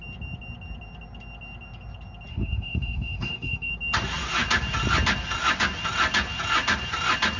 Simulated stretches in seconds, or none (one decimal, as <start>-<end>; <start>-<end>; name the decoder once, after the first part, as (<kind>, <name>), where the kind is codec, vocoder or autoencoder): 2.3-3.7 (autoencoder, DAC-VAE)